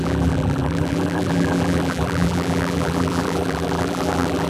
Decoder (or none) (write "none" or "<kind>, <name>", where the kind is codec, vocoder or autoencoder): vocoder, BigVGAN v2